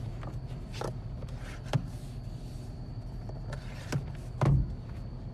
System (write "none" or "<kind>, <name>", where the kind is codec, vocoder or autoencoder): none